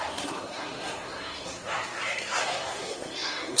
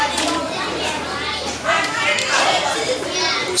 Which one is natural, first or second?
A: second